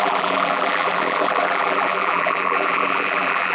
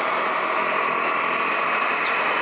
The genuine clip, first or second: second